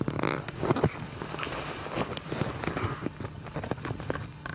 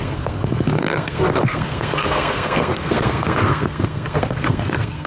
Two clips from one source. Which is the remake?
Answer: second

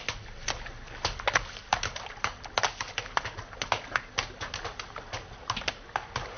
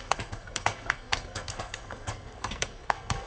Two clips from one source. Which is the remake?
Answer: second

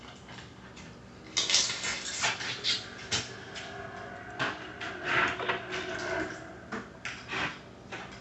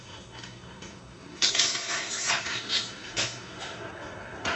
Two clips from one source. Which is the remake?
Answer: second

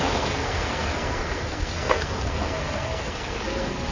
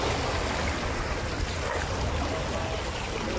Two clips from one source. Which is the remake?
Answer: first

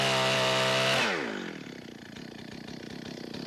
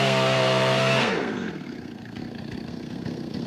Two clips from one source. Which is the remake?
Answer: second